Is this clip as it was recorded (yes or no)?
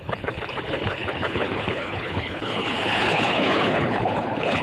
no